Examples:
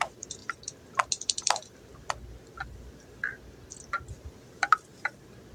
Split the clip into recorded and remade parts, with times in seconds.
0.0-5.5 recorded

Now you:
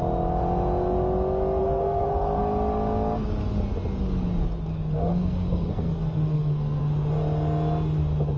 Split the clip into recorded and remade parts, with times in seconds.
0.0-1.6 recorded; 1.6-2.4 remade; 2.4-4.7 recorded; 4.7-6.8 remade; 6.8-8.4 recorded